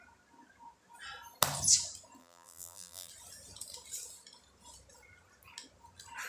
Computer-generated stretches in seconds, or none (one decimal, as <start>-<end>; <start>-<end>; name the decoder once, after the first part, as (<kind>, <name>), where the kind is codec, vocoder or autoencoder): 2.2-3.1 (vocoder, BigVGAN v2)